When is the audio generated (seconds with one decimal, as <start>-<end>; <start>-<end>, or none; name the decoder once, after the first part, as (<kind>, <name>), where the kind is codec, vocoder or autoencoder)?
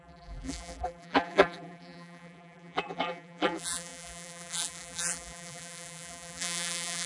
0.0-7.1 (vocoder, BigVGAN v2)